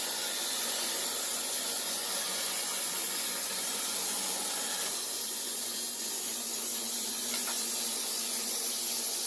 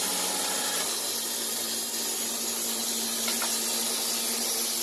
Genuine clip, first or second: second